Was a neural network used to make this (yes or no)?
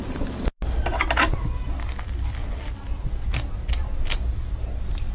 no